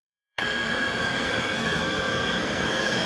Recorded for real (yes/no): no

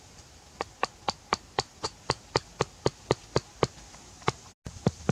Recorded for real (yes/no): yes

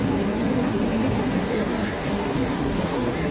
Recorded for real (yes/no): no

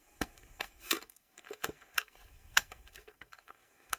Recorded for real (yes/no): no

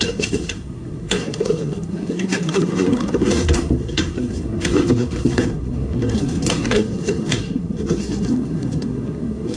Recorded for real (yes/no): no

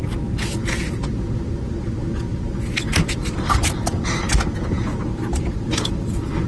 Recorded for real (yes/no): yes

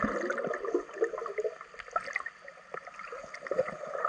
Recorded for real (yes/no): yes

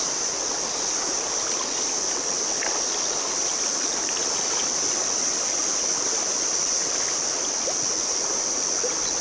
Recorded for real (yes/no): yes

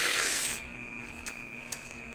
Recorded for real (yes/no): no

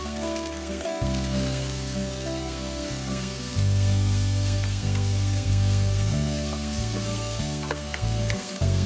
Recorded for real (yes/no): no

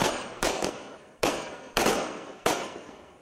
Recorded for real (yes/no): no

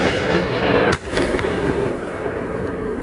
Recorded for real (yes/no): no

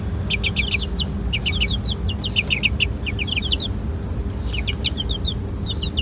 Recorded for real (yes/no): yes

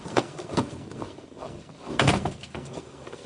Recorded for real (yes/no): no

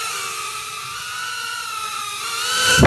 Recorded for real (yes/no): yes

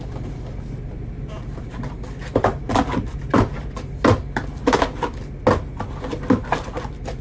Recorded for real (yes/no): yes